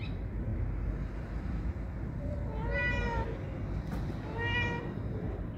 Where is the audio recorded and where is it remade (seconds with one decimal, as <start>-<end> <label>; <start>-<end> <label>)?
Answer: 0.0-5.6 recorded